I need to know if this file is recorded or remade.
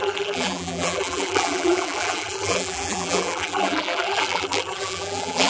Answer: remade